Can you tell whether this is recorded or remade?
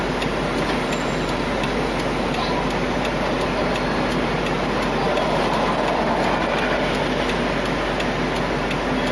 recorded